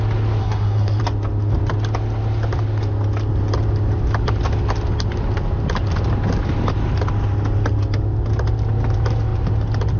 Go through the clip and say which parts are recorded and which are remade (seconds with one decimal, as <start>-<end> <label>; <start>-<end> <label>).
0.0-0.4 recorded; 0.4-1.0 remade; 1.0-10.0 recorded